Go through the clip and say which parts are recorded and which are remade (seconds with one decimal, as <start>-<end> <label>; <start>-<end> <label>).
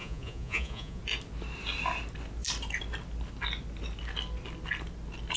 0.0-1.0 remade; 1.0-5.4 recorded